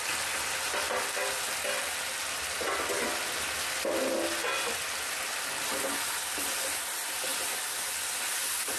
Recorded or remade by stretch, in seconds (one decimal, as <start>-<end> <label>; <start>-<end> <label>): 0.0-8.8 recorded